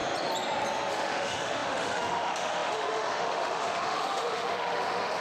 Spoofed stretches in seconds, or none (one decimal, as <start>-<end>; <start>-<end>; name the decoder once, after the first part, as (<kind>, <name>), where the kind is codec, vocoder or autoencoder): 0.9-5.2 (autoencoder, DAC-VAE)

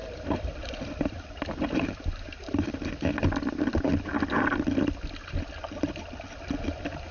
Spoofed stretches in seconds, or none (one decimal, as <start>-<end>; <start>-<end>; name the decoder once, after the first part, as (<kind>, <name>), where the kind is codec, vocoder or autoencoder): 0.0-2.9 (vocoder, BigVGAN v2)

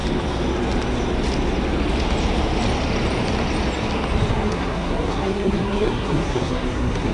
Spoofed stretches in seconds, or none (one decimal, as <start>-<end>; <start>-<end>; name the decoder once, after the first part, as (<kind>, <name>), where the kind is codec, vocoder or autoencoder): 4.3-7.1 (codec, SNAC)